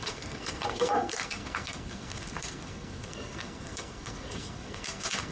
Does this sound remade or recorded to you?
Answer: remade